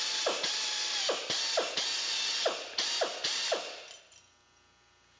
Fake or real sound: real